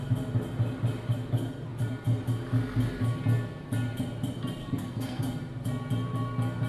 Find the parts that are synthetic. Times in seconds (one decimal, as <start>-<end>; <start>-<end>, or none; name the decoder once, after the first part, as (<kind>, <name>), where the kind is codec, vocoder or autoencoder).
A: 4.6-5.2 (codec, SNAC)